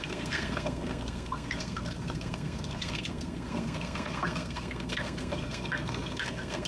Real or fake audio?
fake